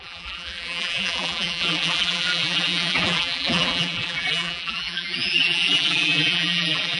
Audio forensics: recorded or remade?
remade